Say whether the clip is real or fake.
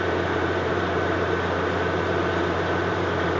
fake